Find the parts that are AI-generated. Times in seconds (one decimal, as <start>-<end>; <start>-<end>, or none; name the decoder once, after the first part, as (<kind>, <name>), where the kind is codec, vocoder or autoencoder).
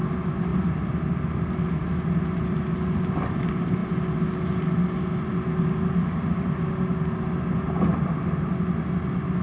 none